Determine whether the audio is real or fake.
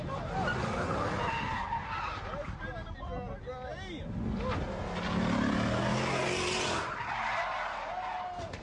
real